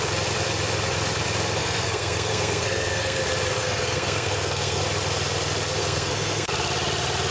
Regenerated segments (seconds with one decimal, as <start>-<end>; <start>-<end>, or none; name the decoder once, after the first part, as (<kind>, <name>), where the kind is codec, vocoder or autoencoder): 1.6-3.2 (codec, SNAC); 3.6-4.8; 5.8-6.5